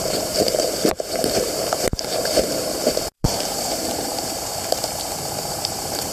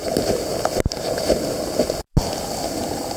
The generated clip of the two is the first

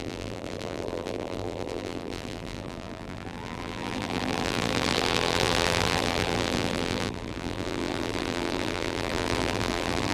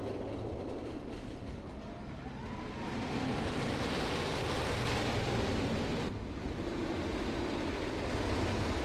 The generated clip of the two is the first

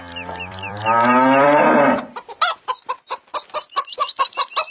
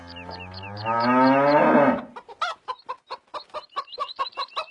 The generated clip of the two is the first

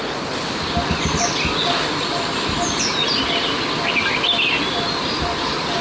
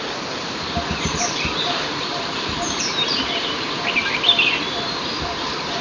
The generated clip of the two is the second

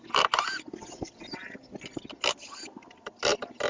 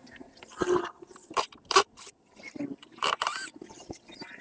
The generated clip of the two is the second